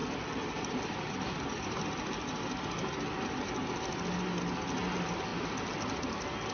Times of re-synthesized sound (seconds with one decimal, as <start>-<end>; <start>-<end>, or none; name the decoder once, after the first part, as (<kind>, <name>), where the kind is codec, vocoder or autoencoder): 0.0-3.4 (vocoder, BigVGAN v2); 5.3-6.1